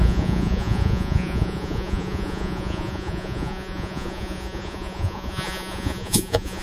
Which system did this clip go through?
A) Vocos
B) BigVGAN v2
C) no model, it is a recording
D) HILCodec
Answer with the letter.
A